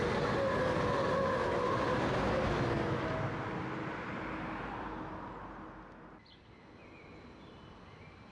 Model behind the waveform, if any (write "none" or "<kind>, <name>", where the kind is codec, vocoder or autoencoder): none